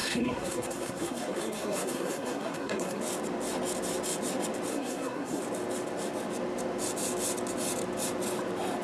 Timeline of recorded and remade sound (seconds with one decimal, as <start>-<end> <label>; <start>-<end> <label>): 0.0-3.0 remade; 3.0-4.7 recorded; 4.7-5.4 remade; 5.4-8.8 recorded